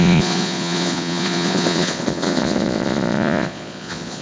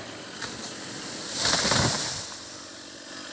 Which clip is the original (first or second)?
second